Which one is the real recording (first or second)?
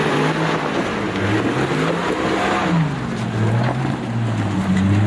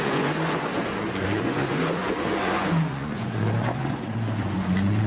first